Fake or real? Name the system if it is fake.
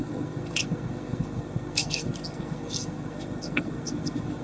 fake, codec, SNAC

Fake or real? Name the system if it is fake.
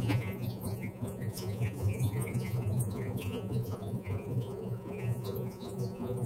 fake, vocoder, Vocos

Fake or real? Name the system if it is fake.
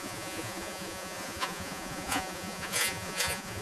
fake, vocoder, Vocos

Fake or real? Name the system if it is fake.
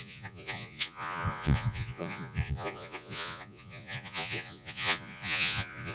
fake, vocoder, Vocos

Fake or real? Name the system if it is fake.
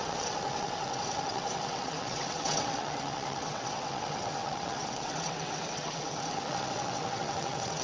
fake, vocoder, WaveNeXt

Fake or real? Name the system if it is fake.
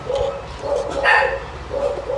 real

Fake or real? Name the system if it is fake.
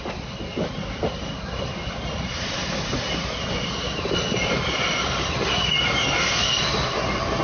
real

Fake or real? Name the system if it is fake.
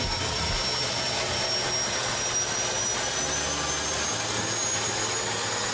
real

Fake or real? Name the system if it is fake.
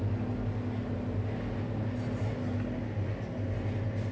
real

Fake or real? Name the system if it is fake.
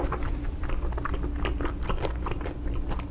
real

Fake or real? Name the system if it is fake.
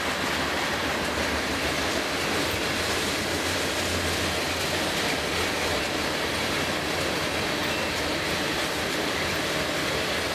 real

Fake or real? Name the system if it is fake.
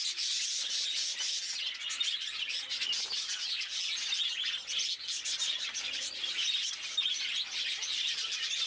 real